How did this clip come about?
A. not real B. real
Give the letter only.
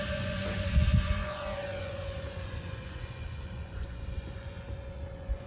A